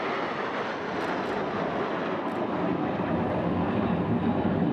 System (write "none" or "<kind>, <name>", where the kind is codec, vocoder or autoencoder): none